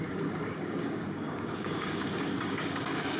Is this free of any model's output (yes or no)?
no